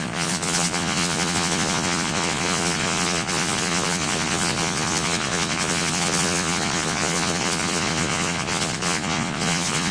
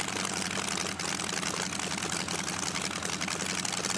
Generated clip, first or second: first